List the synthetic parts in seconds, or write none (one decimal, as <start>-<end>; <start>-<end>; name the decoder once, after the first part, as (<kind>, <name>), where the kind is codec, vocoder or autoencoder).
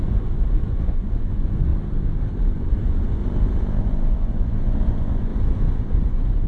0.0-1.7 (vocoder, Vocos); 2.7-3.2; 3.8-5.3; 5.8-6.5